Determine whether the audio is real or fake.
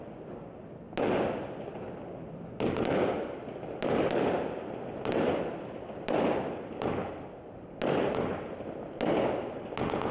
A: real